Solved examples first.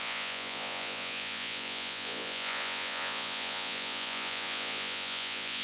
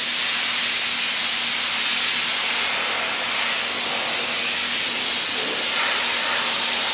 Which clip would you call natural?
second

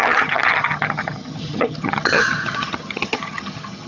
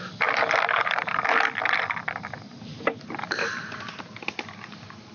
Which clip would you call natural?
second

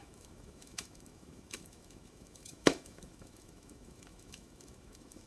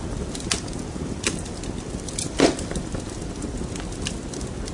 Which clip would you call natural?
second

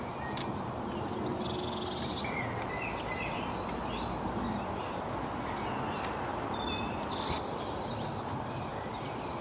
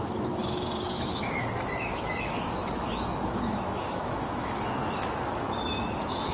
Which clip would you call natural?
first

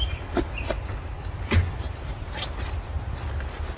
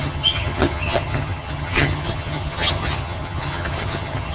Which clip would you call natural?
first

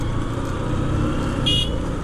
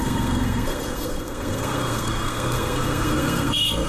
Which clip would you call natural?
first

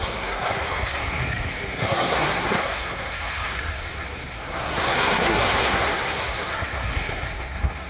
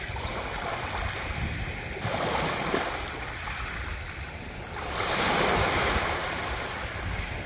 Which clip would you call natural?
second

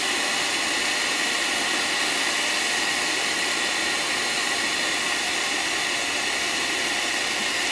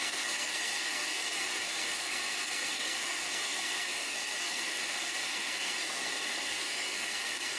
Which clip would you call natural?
first